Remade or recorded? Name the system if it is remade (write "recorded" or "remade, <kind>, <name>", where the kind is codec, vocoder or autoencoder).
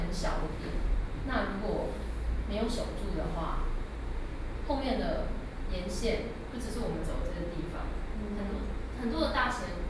recorded